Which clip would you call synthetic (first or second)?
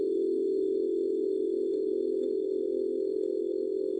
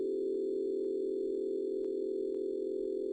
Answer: first